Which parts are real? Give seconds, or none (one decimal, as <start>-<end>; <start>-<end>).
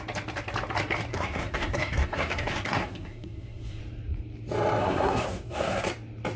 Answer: 0.0-1.1; 3.8-4.8; 5.9-6.4